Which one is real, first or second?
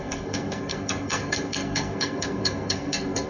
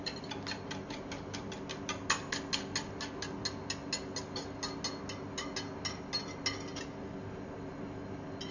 second